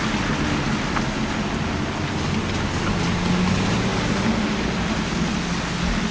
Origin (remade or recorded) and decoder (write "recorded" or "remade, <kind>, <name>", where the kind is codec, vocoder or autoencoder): recorded